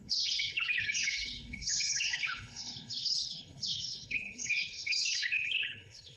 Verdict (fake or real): fake